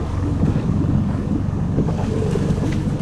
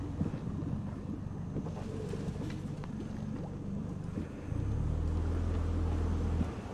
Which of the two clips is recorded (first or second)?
second